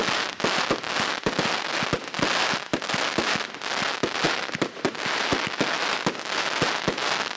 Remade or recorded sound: recorded